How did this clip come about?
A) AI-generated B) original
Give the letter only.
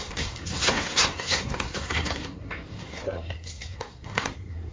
A